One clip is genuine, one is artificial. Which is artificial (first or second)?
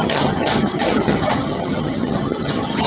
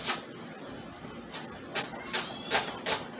first